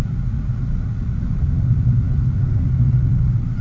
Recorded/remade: remade